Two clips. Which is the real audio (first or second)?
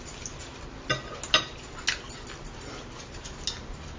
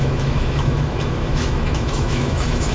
first